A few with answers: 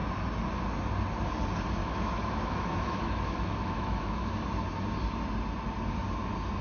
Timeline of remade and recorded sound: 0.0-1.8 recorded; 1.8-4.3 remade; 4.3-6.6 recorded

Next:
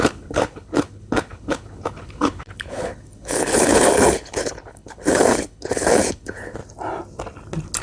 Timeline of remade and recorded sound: 0.0-6.6 remade; 6.6-7.8 recorded

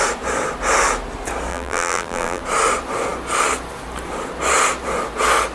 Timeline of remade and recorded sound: 0.0-1.5 recorded; 1.5-2.4 remade; 2.4-5.5 recorded

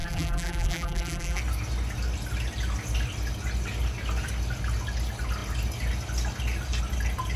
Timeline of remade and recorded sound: 0.0-1.4 remade; 1.4-7.4 recorded

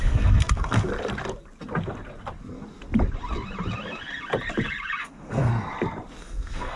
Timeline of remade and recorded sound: 0.0-0.9 remade; 0.9-5.0 recorded; 5.0-5.5 remade; 5.5-6.2 recorded; 6.2-6.8 remade

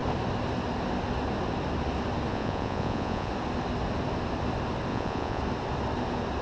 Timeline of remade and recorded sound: 0.0-2.3 recorded; 2.3-3.3 remade; 3.3-4.9 recorded; 4.9-5.4 remade; 5.4-6.4 recorded

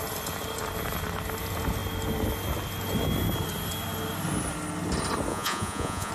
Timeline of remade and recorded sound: 0.0-5.3 recorded; 5.3-6.1 remade